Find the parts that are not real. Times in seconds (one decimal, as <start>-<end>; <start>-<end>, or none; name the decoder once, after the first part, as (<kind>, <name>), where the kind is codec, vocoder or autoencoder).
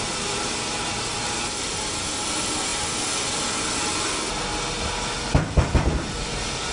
none